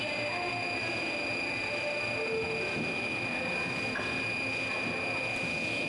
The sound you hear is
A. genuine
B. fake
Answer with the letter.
A